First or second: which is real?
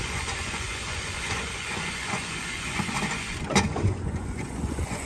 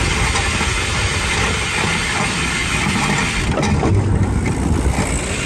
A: second